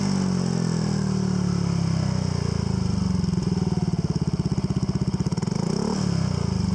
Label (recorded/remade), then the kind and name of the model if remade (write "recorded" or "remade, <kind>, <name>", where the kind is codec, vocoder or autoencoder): recorded